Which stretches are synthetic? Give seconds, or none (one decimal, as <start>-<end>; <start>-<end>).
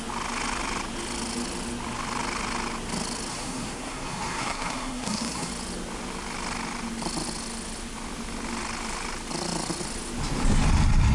3.3-5.5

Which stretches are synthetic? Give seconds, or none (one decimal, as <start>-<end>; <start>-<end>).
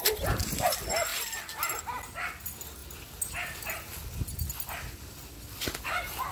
none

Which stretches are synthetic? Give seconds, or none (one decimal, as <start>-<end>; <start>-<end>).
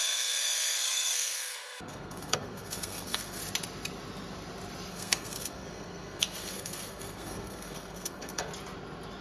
0.0-3.4; 4.9-8.5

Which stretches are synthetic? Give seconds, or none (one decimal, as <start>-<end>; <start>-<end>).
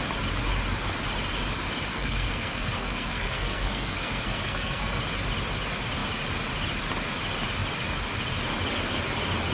1.9-5.0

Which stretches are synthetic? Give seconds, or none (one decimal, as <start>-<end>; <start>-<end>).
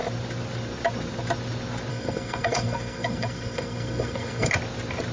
1.9-4.5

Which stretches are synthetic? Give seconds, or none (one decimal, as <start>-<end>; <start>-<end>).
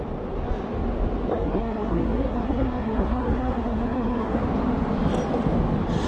1.3-4.4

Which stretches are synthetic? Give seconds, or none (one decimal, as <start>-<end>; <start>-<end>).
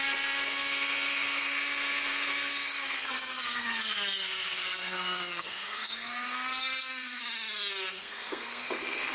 0.0-7.2; 7.9-9.1